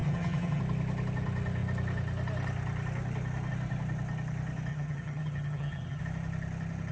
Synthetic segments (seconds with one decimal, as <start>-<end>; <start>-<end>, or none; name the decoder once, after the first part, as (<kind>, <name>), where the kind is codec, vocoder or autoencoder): 0.0-0.6 (vocoder, HiFi-GAN); 4.7-6.0